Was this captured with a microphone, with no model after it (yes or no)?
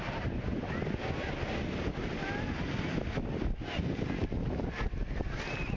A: yes